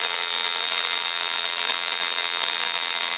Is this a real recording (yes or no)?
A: no